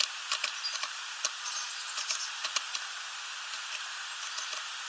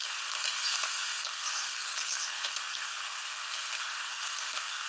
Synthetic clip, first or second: second